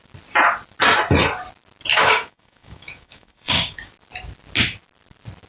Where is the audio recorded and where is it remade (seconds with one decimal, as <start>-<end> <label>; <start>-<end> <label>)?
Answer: 0.0-1.9 recorded; 1.9-3.9 remade; 3.9-5.5 recorded